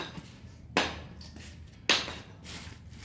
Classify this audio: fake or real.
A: real